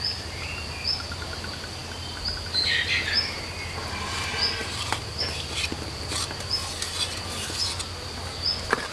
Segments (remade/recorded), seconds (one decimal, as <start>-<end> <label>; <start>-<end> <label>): 0.0-8.9 recorded